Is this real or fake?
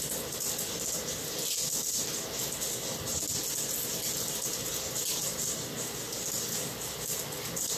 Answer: real